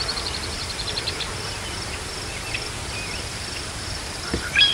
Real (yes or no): no